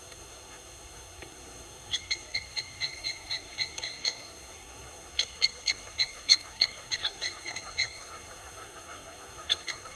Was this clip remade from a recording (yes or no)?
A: yes